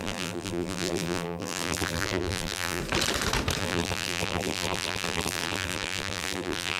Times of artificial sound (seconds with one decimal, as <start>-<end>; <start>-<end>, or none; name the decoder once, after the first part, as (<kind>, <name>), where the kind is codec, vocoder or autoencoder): 0.0-2.8 (vocoder, BigVGAN v2); 3.6-6.8